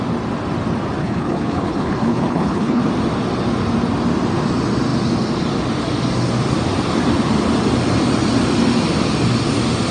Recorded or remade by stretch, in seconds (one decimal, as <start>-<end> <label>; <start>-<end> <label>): 0.0-1.0 recorded; 1.0-2.8 remade; 2.8-9.9 recorded